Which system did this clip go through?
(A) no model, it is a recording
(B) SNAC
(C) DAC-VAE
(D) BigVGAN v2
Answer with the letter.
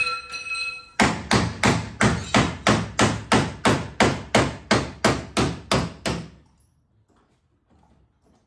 A